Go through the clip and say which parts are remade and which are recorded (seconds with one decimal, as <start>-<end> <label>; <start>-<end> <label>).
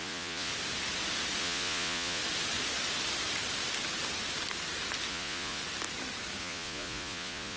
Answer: 0.0-0.5 remade; 0.5-1.4 recorded; 1.4-2.2 remade; 2.2-5.1 recorded; 5.1-5.6 remade; 5.6-6.4 recorded; 6.4-7.6 remade